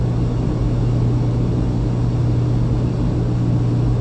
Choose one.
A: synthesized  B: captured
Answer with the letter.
B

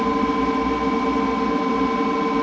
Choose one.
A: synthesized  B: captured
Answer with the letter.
B